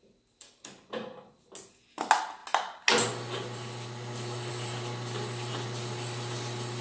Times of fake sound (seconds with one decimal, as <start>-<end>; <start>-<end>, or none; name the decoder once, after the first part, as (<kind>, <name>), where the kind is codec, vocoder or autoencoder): none